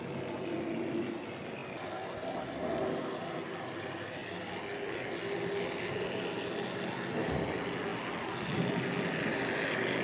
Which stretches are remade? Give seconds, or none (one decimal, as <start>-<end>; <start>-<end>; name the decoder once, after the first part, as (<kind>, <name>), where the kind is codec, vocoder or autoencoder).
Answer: none

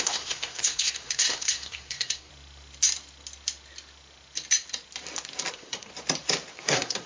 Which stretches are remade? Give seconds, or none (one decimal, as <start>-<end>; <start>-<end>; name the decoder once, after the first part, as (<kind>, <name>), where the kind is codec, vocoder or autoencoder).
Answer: 0.0-2.3 (codec, SNAC); 5.5-5.9; 6.5-7.1

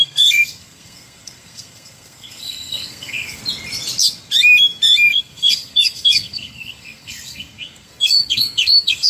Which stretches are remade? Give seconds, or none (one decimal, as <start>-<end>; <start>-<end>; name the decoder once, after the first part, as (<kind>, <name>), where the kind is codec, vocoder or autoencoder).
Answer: 0.0-3.4 (codec, SNAC); 5.1-9.1